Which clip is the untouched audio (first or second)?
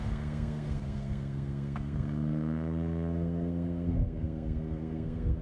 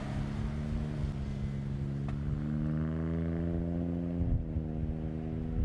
second